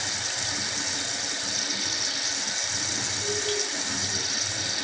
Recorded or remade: recorded